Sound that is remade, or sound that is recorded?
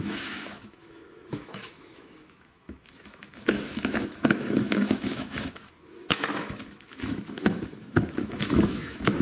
remade